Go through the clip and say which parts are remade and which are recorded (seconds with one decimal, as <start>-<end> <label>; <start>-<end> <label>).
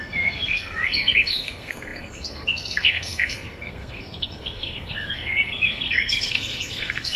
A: 0.0-7.2 remade